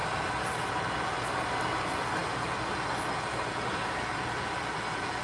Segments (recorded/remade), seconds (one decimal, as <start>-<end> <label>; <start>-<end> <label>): 0.0-5.2 recorded